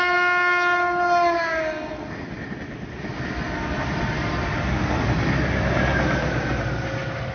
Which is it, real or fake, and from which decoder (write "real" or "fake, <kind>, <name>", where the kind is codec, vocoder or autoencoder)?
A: real